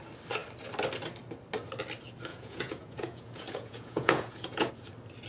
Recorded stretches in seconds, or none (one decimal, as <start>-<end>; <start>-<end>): 0.0-2.3; 4.7-5.3